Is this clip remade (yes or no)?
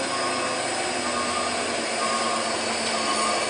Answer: no